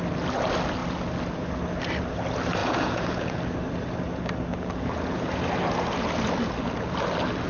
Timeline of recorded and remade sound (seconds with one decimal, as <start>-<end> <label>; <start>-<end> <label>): 0.0-2.6 recorded; 2.6-3.4 remade; 3.4-4.5 recorded; 4.5-5.4 remade; 5.4-7.5 recorded